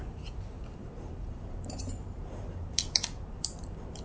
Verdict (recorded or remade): remade